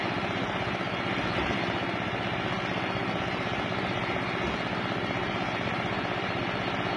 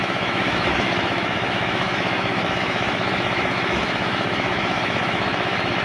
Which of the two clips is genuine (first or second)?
first